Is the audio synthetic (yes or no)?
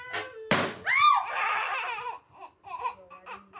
no